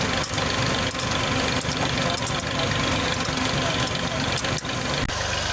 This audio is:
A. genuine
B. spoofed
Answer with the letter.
A